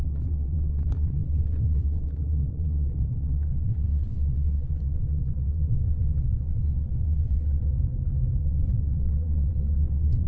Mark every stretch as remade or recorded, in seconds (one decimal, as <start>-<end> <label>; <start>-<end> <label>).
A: 0.0-7.7 remade; 7.7-8.4 recorded; 8.4-10.3 remade